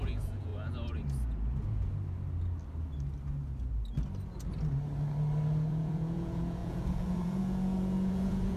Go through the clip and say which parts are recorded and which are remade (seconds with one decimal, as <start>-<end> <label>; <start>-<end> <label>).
0.0-0.5 remade; 0.5-5.7 recorded; 5.7-8.6 remade